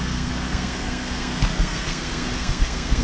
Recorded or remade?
remade